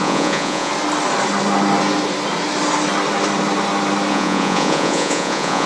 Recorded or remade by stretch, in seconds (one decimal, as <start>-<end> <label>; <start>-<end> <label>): 0.0-0.7 remade; 0.7-4.1 recorded; 4.1-5.7 remade